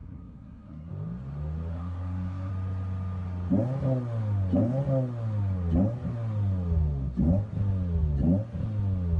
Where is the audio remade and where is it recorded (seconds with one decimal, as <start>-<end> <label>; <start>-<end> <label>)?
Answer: 0.0-0.9 remade; 0.9-1.7 recorded; 1.7-2.5 remade; 2.5-9.2 recorded

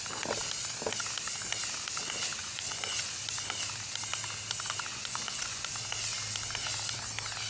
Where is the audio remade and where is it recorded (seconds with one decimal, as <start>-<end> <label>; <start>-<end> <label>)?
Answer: 0.0-2.4 recorded; 2.4-3.2 remade; 3.2-4.9 recorded; 4.9-5.6 remade; 5.6-7.5 recorded

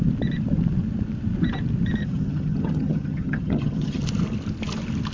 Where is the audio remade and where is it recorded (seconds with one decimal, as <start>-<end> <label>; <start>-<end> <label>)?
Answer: 0.0-2.0 recorded; 2.0-4.0 remade; 4.0-5.1 recorded

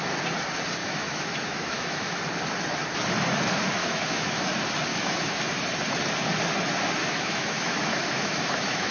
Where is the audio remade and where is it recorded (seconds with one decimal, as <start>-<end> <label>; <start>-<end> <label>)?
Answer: 0.0-0.8 recorded; 0.8-2.2 remade; 2.2-3.8 recorded; 3.8-4.5 remade; 4.5-4.9 recorded; 4.9-5.4 remade; 5.4-7.0 recorded; 7.0-8.9 remade

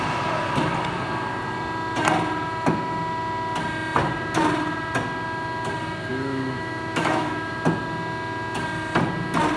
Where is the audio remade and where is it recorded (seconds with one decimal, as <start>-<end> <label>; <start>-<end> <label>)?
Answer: 0.0-6.1 recorded; 6.1-7.5 remade; 7.5-9.6 recorded